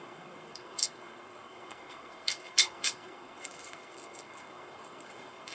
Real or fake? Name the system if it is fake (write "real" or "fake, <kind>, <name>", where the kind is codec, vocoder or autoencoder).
fake, codec, SNAC